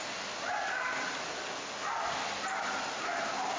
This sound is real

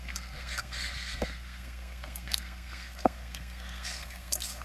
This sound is fake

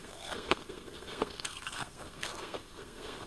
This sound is fake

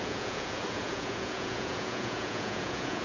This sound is fake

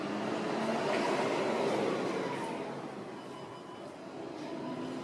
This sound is real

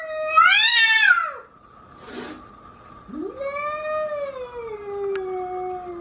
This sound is real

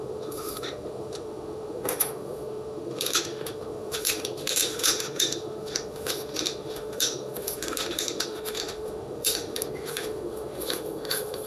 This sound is fake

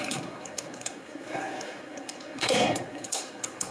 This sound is fake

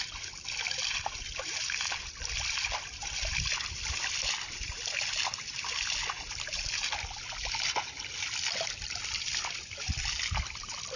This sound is real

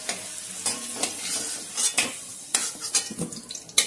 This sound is real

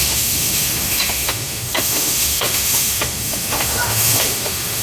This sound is fake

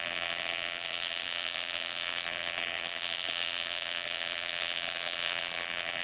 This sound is fake